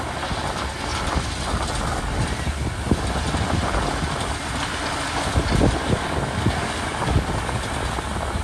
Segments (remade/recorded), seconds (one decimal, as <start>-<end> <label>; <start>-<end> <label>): 0.0-5.8 recorded; 5.8-7.6 remade; 7.6-8.4 recorded